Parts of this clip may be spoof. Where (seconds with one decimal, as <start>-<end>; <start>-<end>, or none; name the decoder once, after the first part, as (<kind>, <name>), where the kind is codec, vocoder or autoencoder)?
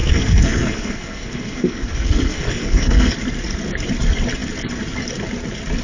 0.0-3.1 (codec, SNAC)